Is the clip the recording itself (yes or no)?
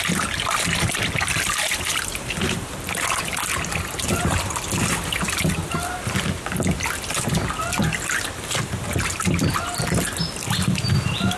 yes